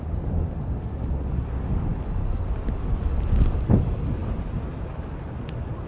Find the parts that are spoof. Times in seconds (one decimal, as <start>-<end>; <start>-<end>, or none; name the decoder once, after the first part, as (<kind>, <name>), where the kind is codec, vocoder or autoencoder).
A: none